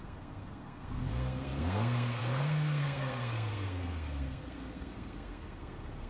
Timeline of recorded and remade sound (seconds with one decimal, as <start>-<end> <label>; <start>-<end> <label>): 0.0-6.1 remade